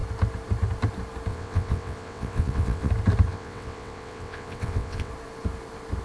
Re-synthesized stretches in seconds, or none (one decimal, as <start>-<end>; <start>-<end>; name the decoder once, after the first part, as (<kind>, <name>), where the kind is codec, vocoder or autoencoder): 1.3-2.9 (vocoder, WaveNeXt); 3.3-5.1